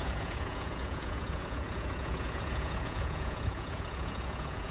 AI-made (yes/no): yes